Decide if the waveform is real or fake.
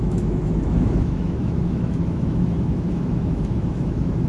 fake